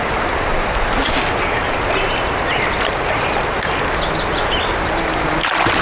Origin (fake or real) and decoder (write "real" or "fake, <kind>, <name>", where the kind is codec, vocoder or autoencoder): real